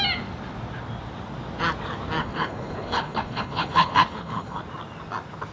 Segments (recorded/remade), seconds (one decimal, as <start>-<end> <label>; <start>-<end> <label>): 0.0-2.2 recorded; 2.2-4.6 remade; 4.6-5.5 recorded